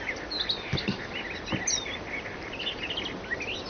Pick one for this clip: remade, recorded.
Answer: recorded